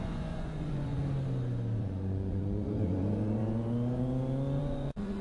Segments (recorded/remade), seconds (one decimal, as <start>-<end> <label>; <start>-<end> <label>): 0.0-1.0 remade; 1.0-1.8 recorded; 1.8-3.4 remade; 3.4-4.6 recorded; 4.6-5.2 remade